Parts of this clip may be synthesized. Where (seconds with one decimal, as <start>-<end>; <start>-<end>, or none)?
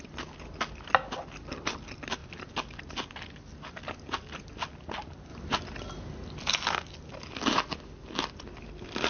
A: none